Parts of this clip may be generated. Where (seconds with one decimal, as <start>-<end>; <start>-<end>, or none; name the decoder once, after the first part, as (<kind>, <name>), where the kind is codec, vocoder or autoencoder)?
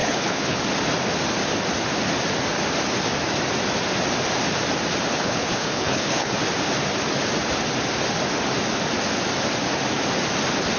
0.0-0.6 (codec, HILCodec); 5.1-6.3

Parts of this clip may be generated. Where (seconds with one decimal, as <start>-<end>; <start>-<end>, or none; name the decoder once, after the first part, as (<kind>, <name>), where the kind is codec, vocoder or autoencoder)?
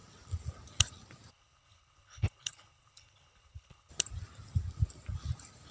1.3-3.9 (codec, HILCodec)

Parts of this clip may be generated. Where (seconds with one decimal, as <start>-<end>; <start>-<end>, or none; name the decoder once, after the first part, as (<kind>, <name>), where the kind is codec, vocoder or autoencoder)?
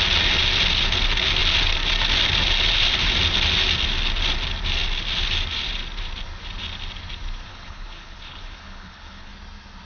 7.5-9.3 (codec, HILCodec)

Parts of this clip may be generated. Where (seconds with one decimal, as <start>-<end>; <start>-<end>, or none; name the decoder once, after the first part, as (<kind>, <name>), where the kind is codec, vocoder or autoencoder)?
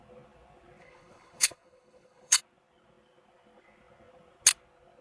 0.8-2.4 (codec, HILCodec)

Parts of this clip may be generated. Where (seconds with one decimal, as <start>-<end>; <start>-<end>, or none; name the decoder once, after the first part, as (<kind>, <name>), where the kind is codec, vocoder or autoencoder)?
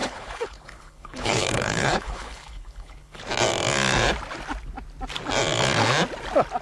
0.0-3.2 (codec, HILCodec)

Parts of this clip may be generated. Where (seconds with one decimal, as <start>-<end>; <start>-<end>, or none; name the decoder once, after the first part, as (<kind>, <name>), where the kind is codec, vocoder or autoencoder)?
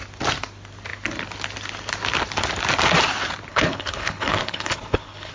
3.5-5.3 (codec, HILCodec)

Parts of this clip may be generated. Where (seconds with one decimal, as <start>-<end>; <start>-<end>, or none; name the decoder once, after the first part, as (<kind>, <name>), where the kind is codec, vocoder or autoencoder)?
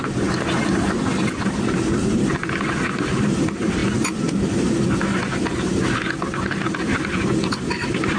none